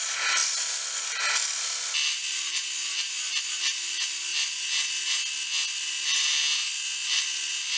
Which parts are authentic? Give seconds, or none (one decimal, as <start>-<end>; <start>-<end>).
0.0-7.8